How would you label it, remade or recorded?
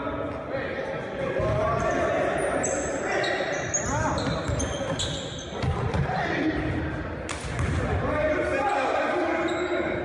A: recorded